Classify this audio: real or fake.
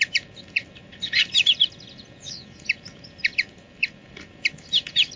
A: real